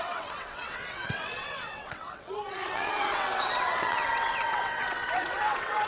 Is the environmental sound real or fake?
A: fake